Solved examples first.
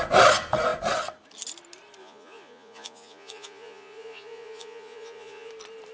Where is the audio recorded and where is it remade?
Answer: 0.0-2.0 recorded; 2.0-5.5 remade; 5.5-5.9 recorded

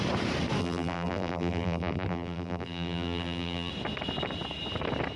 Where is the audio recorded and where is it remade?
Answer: 0.0-0.6 recorded; 0.6-3.7 remade; 3.7-5.2 recorded

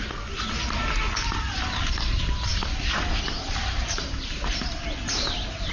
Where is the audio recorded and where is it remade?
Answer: 0.0-5.7 recorded

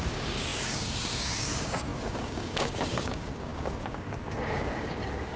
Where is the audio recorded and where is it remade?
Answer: 0.0-5.4 remade